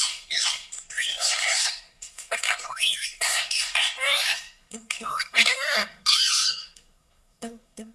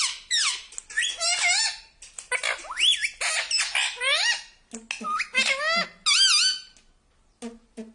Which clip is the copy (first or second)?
first